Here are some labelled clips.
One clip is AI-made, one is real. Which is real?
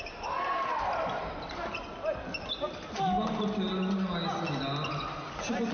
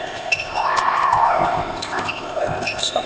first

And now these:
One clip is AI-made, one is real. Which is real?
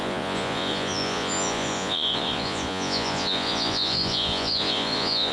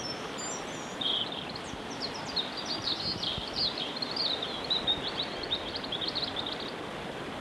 second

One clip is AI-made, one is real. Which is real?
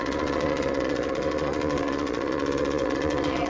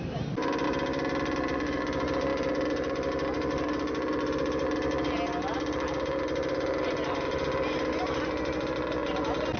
second